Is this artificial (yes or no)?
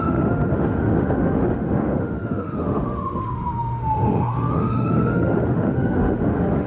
yes